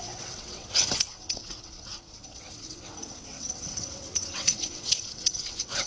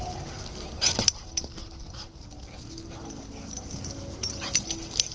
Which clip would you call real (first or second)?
second